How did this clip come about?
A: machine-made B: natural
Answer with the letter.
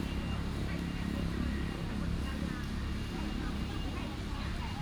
B